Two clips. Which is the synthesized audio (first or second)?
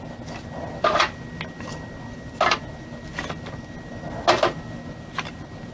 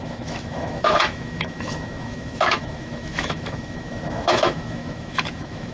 second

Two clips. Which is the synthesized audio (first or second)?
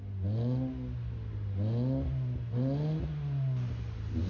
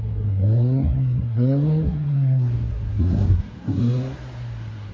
second